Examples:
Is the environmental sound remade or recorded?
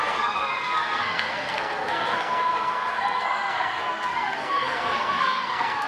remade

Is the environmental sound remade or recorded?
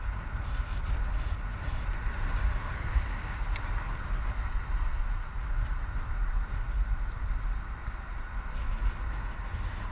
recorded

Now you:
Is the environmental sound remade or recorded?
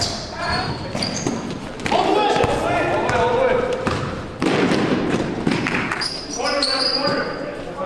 remade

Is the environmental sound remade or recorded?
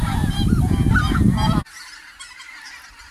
recorded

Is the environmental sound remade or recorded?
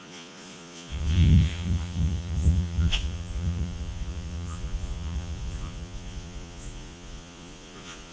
remade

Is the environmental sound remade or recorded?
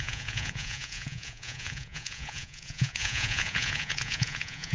remade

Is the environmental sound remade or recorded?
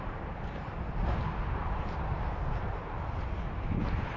remade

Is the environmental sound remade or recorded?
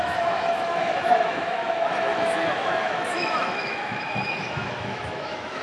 remade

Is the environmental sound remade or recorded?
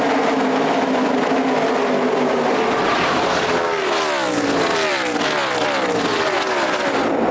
recorded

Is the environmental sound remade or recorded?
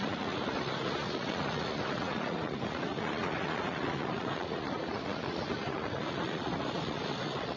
remade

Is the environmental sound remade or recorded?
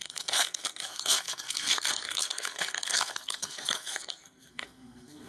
remade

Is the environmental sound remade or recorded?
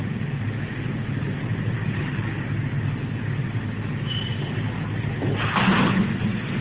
recorded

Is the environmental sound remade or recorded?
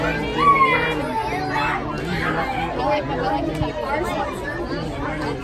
recorded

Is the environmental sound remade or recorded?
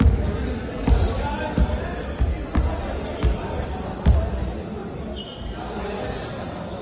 recorded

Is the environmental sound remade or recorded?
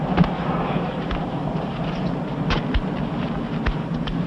recorded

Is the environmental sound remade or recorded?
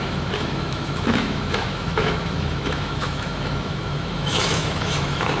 remade